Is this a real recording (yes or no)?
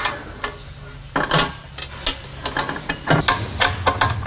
yes